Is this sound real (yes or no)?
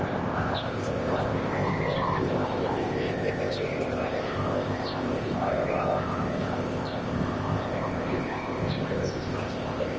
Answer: no